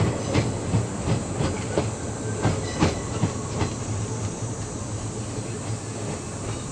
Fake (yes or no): no